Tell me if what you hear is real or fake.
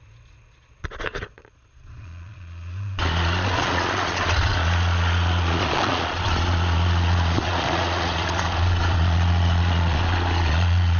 fake